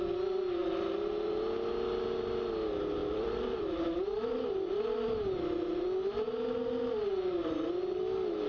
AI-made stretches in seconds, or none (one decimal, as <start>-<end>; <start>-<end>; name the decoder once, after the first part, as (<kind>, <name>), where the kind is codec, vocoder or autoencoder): 0.6-1.3 (vocoder, BigVGAN v2); 3.0-4.8